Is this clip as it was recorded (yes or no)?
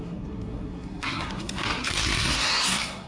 no